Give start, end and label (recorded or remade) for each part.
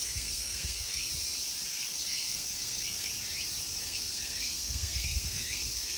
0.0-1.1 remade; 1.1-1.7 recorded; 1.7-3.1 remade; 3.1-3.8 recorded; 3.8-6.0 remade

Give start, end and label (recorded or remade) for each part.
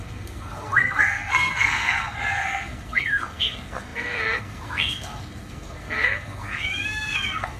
0.0-7.6 remade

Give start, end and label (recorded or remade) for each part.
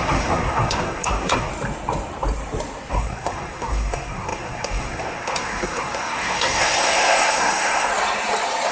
0.0-1.5 remade; 1.5-2.9 recorded; 2.9-7.9 remade; 7.9-8.7 recorded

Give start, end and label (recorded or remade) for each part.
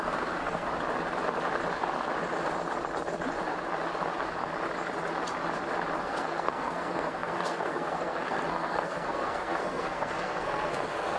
0.0-0.7 remade; 0.7-6.0 recorded; 6.0-11.2 remade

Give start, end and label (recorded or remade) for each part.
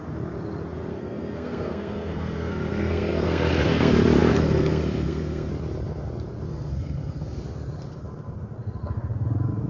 0.0-0.9 recorded; 0.9-3.9 remade; 3.9-4.3 recorded; 4.3-5.5 remade; 5.5-6.5 recorded; 6.5-7.4 remade; 7.4-9.7 recorded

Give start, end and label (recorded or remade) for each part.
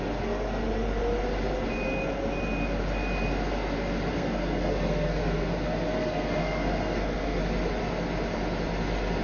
0.0-4.1 recorded; 4.1-7.4 remade; 7.4-9.2 recorded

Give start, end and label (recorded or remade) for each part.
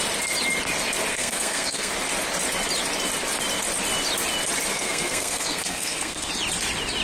0.0-1.1 recorded; 1.1-1.9 remade; 1.9-4.7 recorded; 4.7-6.3 remade; 6.3-7.0 recorded